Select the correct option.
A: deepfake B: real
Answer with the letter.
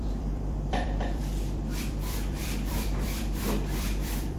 A